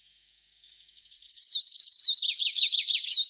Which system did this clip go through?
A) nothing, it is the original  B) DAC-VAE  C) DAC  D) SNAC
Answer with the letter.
B